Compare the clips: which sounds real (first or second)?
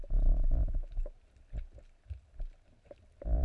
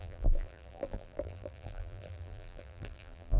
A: first